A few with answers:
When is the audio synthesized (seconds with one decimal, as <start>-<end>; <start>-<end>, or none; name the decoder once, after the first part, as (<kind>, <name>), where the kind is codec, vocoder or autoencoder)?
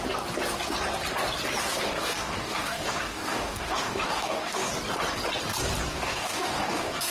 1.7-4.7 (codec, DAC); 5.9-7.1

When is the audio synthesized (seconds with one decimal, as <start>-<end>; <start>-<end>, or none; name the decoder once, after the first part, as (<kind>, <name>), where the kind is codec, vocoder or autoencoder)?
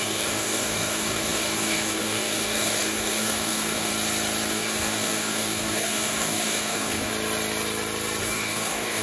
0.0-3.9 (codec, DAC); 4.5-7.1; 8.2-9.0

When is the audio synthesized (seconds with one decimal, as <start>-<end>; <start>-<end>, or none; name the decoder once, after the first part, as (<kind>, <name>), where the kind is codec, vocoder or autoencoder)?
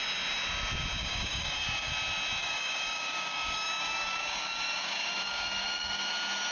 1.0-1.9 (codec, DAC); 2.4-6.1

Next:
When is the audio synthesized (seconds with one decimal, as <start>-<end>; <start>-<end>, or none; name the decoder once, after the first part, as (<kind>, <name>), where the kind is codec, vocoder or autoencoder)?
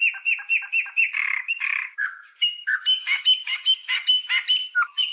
1.1-4.2 (codec, DAC)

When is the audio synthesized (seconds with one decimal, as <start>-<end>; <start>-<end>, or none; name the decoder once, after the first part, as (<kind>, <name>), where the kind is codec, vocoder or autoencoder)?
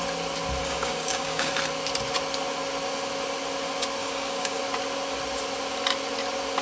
0.6-1.5 (codec, DAC); 4.0-4.6